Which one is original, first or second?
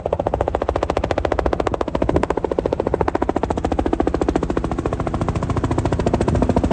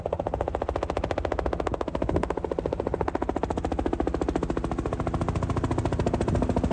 second